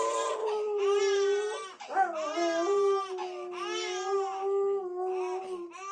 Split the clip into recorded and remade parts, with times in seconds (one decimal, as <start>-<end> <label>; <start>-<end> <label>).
0.0-0.4 recorded; 0.4-1.0 remade; 1.0-5.9 recorded